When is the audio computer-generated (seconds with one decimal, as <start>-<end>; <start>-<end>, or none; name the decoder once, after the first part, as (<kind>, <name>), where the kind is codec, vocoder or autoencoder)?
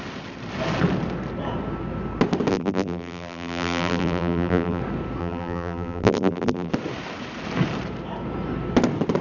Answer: 2.5-4.8 (vocoder, BigVGAN v2); 5.2-6.7